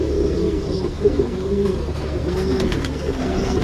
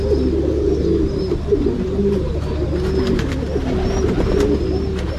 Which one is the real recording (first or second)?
second